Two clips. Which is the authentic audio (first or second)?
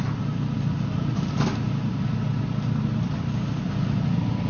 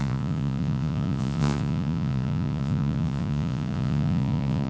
first